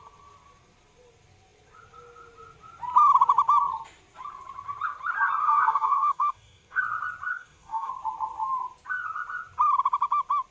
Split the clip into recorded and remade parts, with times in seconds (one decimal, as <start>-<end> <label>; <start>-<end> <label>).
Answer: 0.0-5.4 recorded; 5.4-6.8 remade; 6.8-7.3 recorded; 7.3-7.9 remade; 7.9-10.5 recorded